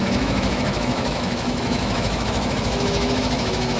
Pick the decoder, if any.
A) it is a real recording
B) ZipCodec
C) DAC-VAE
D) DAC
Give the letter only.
C